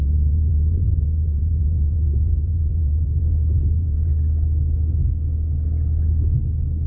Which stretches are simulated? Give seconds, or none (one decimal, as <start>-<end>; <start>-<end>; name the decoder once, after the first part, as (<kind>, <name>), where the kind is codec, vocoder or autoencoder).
0.0-4.1 (vocoder, BigVGAN v2)